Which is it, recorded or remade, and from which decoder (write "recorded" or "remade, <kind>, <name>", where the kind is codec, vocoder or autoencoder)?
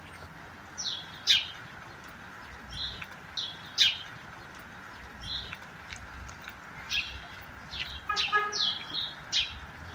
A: recorded